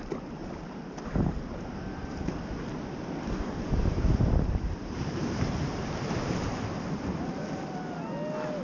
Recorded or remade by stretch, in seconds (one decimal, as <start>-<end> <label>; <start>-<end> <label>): 0.0-0.4 recorded; 0.4-2.1 remade; 2.1-3.9 recorded; 3.9-7.9 remade; 7.9-8.6 recorded